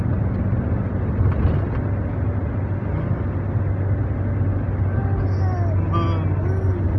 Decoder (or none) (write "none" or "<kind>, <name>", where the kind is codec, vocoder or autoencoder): none